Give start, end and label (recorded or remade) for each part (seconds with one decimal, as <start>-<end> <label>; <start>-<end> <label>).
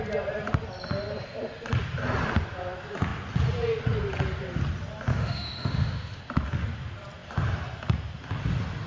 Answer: 0.0-5.1 recorded; 5.1-6.2 remade; 6.2-8.9 recorded